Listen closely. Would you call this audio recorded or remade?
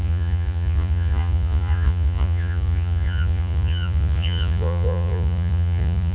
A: remade